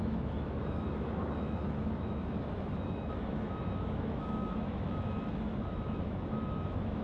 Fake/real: fake